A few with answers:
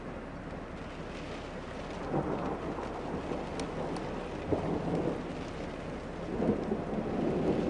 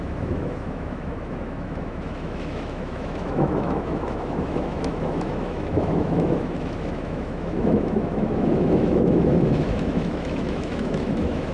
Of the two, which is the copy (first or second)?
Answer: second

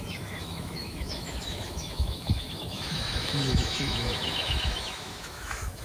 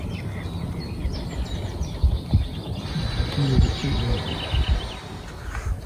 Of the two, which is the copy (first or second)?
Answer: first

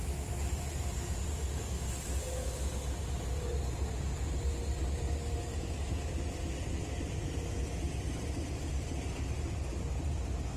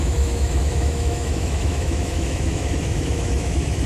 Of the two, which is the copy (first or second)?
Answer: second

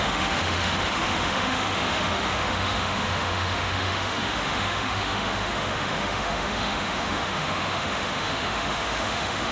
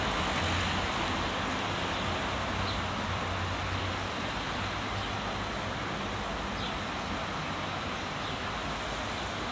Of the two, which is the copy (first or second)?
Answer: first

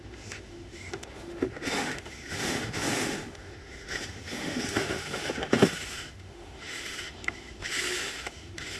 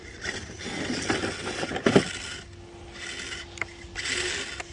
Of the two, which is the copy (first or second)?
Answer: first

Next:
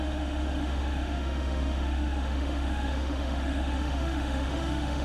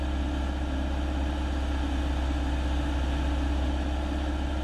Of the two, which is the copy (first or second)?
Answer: first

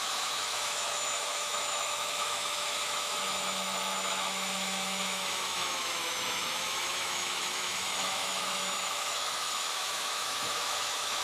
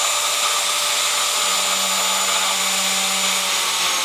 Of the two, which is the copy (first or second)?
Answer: first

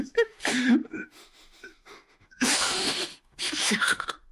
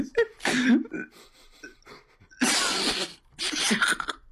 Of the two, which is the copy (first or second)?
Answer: first